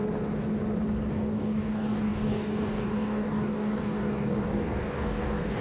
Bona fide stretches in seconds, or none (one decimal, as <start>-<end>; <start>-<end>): 0.0-1.1